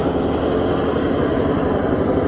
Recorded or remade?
recorded